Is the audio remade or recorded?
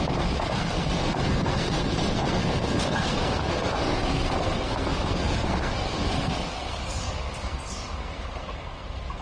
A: remade